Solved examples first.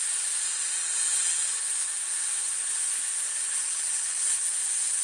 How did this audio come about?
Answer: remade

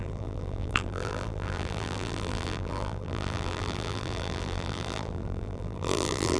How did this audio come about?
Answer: remade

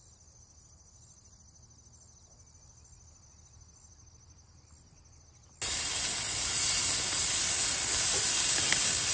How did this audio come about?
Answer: recorded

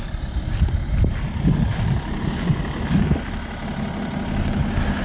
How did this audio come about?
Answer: recorded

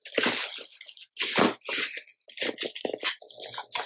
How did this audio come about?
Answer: recorded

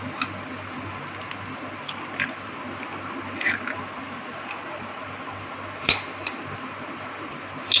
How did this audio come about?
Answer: recorded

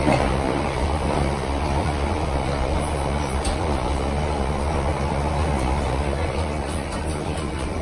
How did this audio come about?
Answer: remade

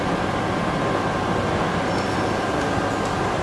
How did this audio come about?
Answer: recorded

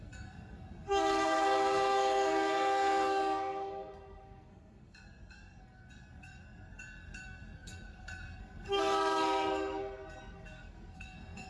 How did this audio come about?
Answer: remade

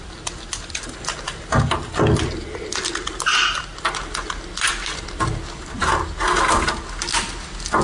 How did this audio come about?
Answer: recorded